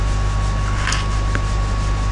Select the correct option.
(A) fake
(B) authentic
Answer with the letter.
B